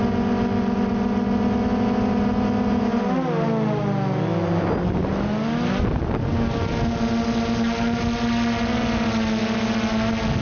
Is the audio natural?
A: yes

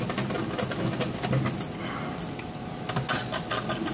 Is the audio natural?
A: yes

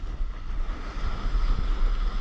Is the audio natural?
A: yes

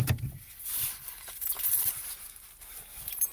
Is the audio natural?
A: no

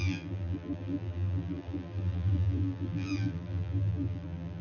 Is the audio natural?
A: no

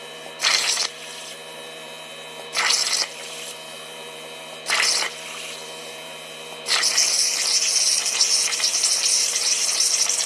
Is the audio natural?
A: no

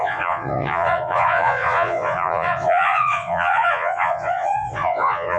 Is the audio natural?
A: no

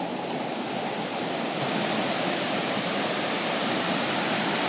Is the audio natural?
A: yes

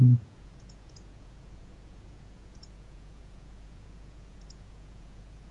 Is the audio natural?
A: no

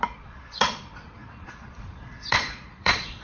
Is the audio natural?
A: no